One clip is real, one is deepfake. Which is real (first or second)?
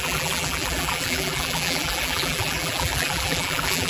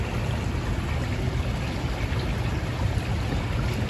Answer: second